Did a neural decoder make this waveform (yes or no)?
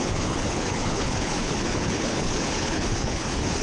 yes